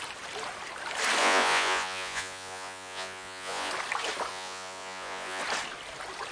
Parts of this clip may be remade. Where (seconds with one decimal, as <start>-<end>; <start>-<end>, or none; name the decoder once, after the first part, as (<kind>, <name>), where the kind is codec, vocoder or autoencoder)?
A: 1.2-3.7 (vocoder, Vocos); 4.3-5.4